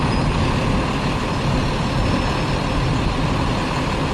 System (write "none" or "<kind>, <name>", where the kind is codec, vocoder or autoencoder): none